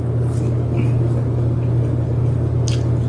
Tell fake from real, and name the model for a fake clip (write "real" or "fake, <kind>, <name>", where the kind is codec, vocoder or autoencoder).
real